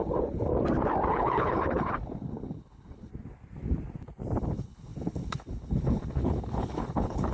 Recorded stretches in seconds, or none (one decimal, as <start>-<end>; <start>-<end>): 0.5-1.1; 3.1-4.4